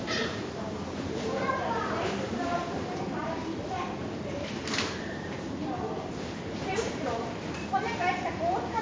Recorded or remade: remade